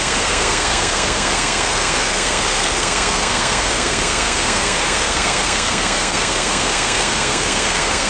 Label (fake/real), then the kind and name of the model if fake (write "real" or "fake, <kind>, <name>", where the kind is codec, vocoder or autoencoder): fake, codec, SNAC